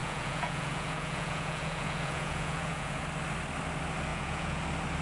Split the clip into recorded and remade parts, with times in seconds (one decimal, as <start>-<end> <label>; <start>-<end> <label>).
0.0-3.0 remade; 3.0-4.1 recorded; 4.1-4.6 remade; 4.6-5.0 recorded